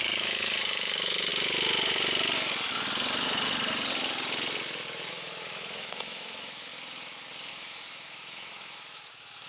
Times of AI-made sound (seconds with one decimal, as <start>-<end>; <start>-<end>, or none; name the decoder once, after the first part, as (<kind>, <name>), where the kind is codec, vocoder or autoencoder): 0.0-1.3 (autoencoder, DAC-VAE); 5.1-6.7; 7.5-9.5